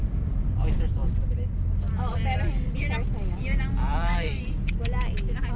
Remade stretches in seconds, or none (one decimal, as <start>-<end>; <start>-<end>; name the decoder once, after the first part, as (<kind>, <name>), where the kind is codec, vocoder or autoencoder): 0.0-0.5 (vocoder, BigVGAN v2); 1.0-4.4